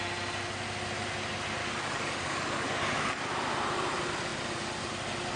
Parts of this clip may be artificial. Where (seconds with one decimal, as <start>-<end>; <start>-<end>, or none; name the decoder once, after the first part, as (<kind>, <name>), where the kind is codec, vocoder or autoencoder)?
1.6-3.3 (codec, DAC)